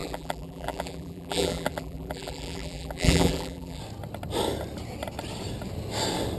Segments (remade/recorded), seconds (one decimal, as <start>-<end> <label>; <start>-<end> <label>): 0.0-3.8 remade; 3.8-6.4 recorded